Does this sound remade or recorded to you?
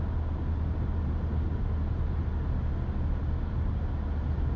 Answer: recorded